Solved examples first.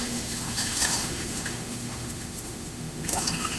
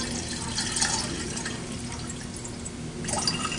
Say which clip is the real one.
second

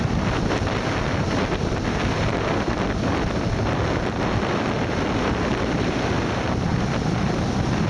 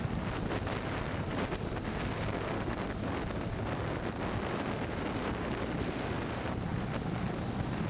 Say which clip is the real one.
second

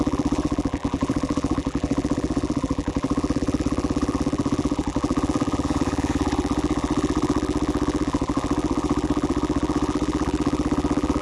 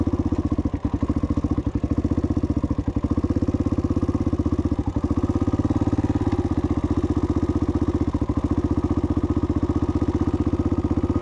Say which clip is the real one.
second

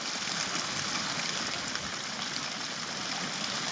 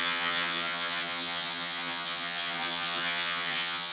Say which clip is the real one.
first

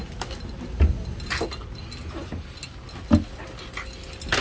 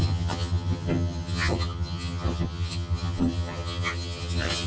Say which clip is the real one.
first